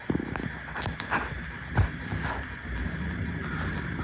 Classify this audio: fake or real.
real